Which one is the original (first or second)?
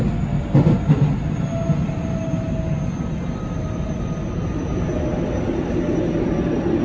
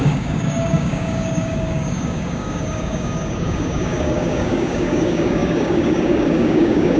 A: first